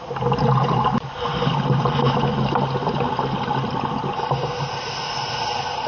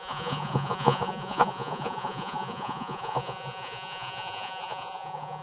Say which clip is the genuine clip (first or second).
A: first